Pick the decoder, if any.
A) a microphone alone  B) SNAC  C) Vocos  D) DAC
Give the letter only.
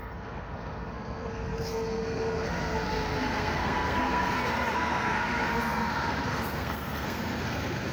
B